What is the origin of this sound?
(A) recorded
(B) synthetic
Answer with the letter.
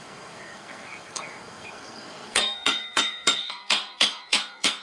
B